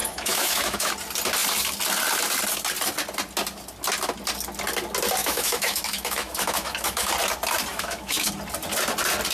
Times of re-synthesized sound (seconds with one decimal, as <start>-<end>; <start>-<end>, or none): 0.0-0.9; 5.2-7.1; 7.7-8.3